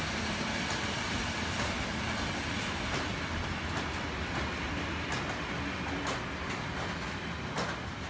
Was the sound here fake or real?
real